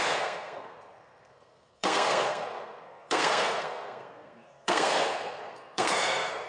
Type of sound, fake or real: fake